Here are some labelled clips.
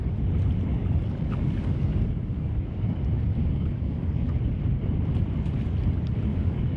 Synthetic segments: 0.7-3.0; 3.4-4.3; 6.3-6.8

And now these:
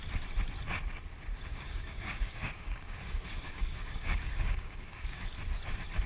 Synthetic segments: 1.5-5.2

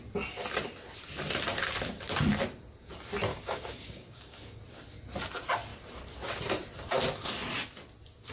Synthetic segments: 3.3-4.6

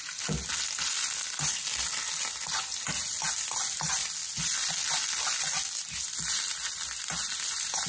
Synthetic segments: none

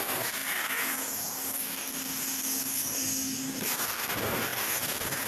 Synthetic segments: 0.0-5.3